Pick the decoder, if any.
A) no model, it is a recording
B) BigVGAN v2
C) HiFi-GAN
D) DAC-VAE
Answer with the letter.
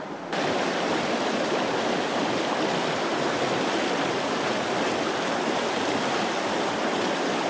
A